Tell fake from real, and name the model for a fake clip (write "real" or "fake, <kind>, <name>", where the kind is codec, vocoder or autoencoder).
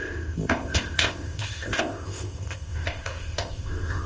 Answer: fake, codec, ZipCodec